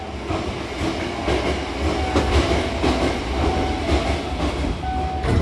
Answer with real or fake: real